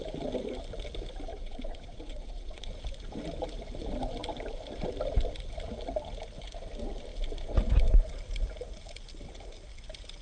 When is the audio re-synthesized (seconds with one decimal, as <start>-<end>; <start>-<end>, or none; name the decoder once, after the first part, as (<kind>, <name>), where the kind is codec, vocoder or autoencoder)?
1.3-2.7 (vocoder, Vocos)